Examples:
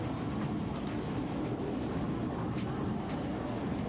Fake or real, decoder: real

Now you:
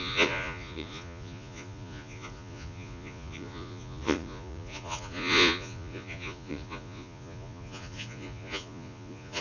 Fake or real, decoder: fake, vocoder, Vocos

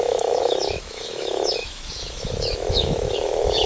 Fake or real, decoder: fake, autoencoder, DAC-VAE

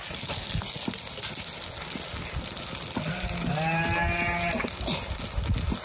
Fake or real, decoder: real